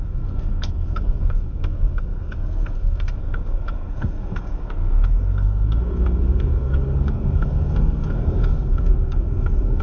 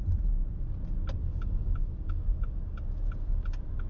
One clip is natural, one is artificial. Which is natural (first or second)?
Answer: second